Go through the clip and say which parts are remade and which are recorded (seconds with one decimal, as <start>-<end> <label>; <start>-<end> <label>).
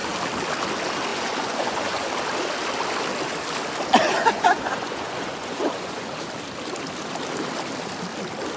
0.0-1.1 recorded; 1.1-2.1 remade; 2.1-4.2 recorded; 4.2-6.1 remade; 6.1-8.6 recorded